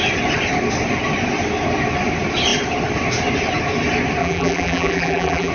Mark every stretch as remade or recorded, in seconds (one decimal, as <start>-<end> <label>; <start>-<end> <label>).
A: 0.0-4.2 recorded; 4.2-5.5 remade